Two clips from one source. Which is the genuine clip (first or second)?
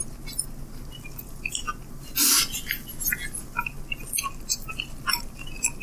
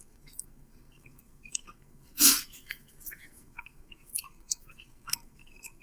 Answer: first